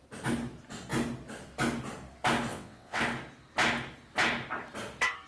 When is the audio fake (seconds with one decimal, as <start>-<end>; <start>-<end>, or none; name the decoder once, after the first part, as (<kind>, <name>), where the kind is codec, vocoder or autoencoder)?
2.5-3.0 (vocoder, WaveNeXt)